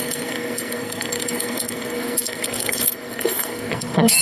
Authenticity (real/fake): fake